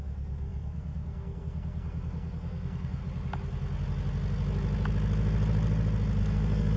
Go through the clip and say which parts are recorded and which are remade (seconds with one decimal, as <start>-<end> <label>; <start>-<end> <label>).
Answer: 0.0-3.0 remade; 3.0-6.2 recorded; 6.2-6.8 remade